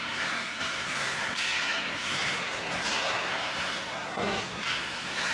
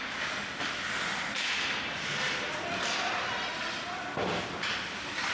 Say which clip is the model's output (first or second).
first